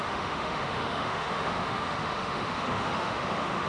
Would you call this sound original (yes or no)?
no